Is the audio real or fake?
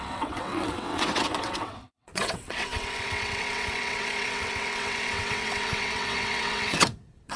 fake